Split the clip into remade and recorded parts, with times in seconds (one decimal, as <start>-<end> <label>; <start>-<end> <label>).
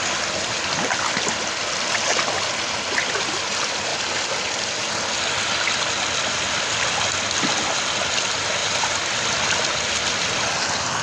0.0-3.9 recorded; 3.9-4.7 remade; 4.7-8.6 recorded; 8.6-9.5 remade; 9.5-11.0 recorded